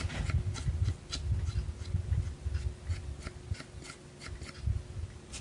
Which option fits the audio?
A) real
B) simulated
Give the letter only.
A